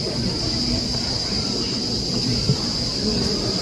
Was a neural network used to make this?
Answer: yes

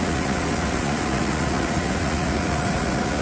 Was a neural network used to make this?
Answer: yes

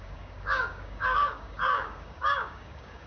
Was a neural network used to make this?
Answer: yes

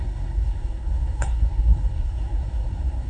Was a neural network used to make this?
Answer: yes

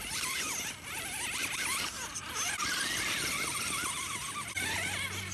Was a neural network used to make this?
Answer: no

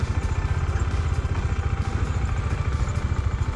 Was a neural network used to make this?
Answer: no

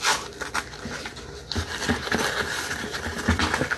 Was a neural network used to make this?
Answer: no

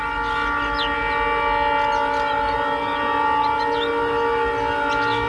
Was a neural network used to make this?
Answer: no